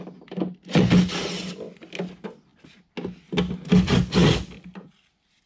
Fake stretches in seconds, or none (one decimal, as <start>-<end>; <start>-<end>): none